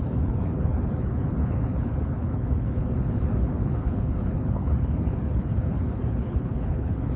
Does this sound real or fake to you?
fake